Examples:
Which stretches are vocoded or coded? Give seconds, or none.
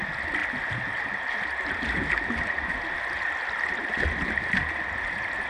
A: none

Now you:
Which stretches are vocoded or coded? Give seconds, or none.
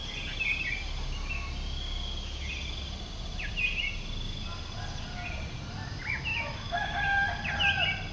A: 6.3-6.9 (autoencoder, DAC-VAE)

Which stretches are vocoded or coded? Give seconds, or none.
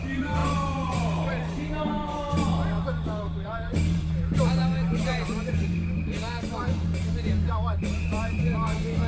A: 0.0-9.1 (vocoder, BigVGAN v2)